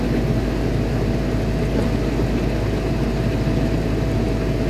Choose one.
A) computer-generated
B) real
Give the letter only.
B